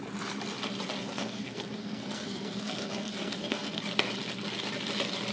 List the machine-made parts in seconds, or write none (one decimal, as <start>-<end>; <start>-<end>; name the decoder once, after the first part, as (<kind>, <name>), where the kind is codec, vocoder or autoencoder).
1.0-3.8 (codec, SNAC)